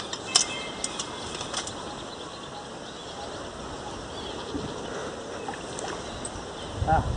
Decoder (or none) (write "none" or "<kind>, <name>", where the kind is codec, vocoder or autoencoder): none